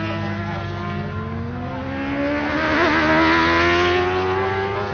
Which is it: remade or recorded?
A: recorded